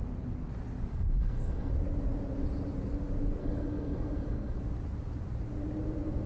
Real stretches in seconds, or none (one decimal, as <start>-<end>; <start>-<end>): 0.0-0.9; 1.7-3.4; 4.6-6.3